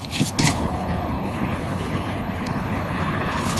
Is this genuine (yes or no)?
no